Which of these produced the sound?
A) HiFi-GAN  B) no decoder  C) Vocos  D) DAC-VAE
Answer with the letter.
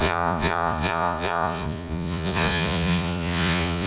C